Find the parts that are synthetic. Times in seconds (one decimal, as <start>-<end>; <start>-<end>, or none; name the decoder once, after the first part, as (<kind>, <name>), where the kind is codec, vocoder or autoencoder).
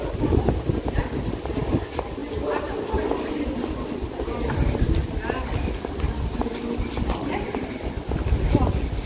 none